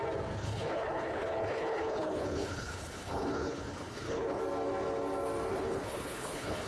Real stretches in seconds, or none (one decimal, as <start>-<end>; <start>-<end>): 0.0-0.4; 4.4-5.5